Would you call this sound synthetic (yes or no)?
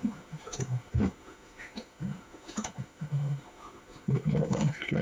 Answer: yes